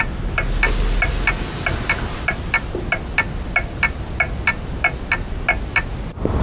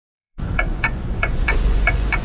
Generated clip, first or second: second